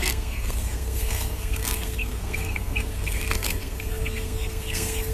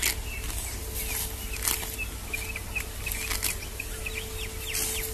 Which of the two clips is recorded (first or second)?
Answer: second